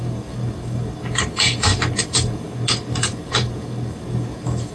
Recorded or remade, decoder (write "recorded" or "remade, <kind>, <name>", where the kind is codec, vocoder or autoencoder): remade, codec, DAC